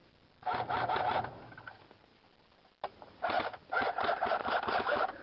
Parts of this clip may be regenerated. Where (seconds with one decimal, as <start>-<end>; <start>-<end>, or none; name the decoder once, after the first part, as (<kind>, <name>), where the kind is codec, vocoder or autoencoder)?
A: none